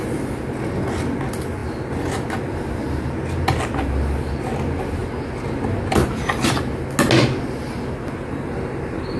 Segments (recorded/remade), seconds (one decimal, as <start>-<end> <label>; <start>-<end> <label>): 0.0-9.2 recorded